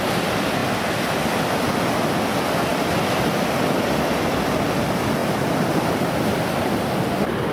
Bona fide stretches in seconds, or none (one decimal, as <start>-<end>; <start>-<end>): 0.0-5.2; 5.9-7.5